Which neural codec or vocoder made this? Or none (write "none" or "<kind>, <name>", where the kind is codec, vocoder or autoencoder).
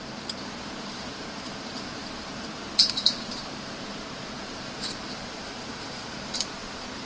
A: vocoder, BigVGAN v2